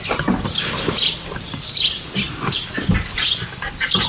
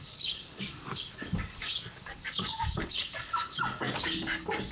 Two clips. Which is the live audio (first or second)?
first